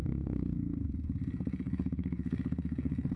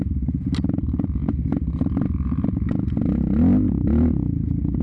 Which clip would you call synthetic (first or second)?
first